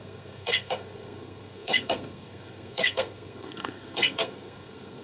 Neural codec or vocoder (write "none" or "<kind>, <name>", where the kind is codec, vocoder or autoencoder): codec, SNAC